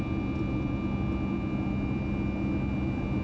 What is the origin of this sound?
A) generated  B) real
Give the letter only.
B